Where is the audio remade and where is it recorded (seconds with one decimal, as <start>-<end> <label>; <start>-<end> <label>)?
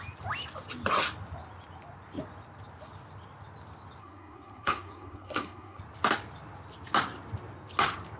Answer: 0.0-4.0 recorded; 4.0-5.8 remade; 5.8-8.2 recorded